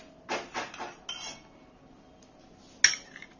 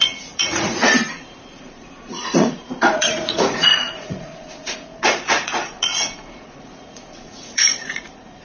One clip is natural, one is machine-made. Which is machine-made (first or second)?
second